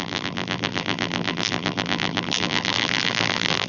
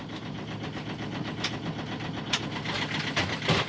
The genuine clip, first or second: second